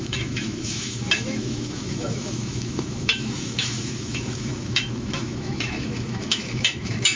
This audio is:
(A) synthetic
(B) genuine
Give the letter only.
A